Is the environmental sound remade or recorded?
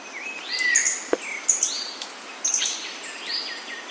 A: recorded